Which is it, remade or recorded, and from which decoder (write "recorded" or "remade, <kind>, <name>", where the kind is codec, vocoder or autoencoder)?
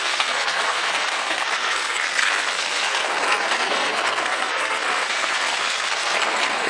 remade, codec, SNAC